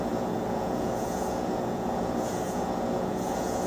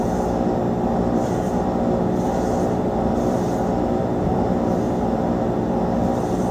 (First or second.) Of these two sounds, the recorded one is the second